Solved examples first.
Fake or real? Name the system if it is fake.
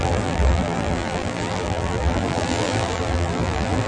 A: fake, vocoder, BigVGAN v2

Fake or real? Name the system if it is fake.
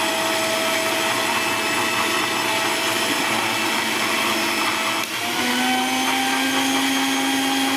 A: real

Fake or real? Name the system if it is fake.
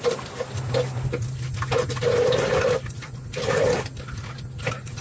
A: real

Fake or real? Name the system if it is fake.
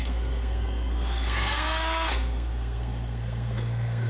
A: fake, codec, SNAC